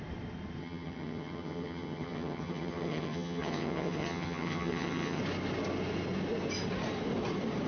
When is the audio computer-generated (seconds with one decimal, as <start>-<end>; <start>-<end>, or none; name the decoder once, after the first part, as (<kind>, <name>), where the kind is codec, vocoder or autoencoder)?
0.6-5.2 (vocoder, HiFi-GAN)